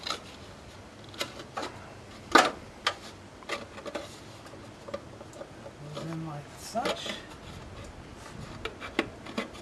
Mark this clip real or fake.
real